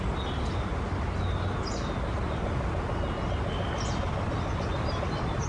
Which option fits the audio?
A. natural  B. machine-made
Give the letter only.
A